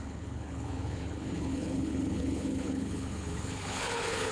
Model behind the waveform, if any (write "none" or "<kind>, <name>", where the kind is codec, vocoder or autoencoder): codec, HILCodec